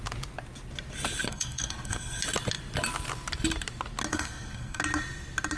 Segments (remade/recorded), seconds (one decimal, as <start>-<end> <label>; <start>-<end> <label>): 0.0-1.3 recorded; 1.3-2.2 remade; 2.2-4.1 recorded; 4.1-4.8 remade; 4.8-5.6 recorded